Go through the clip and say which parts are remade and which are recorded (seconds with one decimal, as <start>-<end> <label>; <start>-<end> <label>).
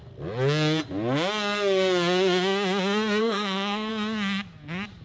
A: 0.0-3.2 recorded; 3.2-3.9 remade; 3.9-5.0 recorded